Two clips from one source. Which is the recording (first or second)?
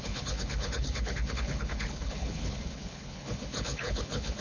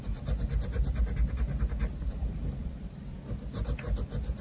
second